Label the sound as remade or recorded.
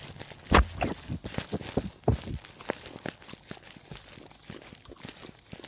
recorded